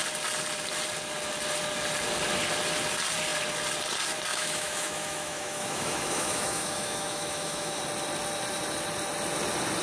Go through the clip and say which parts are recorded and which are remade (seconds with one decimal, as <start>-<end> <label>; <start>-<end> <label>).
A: 0.0-4.3 recorded; 4.3-7.8 remade; 7.8-9.8 recorded